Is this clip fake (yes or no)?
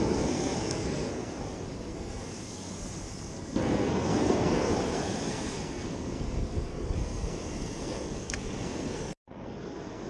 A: yes